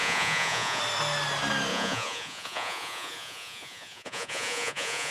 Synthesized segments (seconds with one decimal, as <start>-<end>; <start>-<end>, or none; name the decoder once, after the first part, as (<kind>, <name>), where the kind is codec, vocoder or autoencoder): 0.0-0.8 (vocoder, Vocos); 1.7-5.1